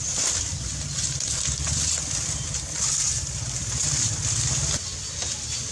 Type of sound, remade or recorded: recorded